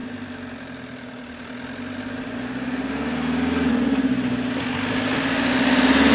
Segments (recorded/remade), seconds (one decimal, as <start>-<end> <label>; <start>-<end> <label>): 0.0-6.1 recorded